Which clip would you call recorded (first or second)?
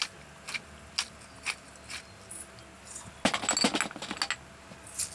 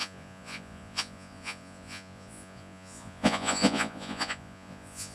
first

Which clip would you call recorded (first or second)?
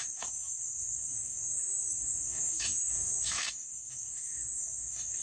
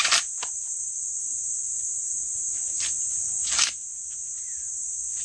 second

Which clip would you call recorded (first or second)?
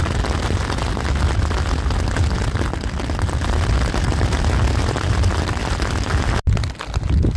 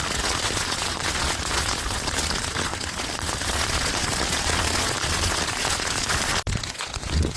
first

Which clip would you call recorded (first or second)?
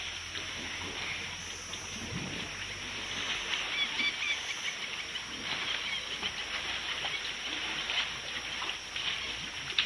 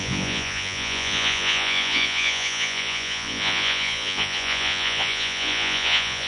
first